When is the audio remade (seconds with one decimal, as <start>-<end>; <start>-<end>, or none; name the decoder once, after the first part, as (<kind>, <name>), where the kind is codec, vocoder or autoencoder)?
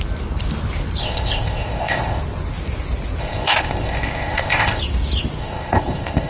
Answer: 1.0-2.2 (codec, ZipCodec); 3.2-4.8; 5.4-6.3